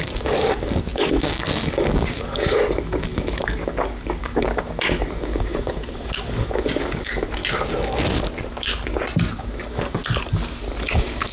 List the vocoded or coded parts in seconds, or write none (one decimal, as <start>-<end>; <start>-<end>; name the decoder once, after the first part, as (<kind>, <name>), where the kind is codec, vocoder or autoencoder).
0.0-7.4 (codec, DAC); 9.4-10.0; 10.9-11.3